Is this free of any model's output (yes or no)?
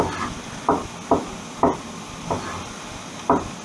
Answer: yes